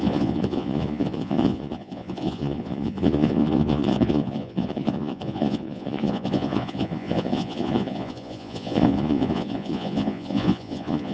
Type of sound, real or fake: fake